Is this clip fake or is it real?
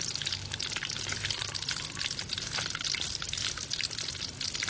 real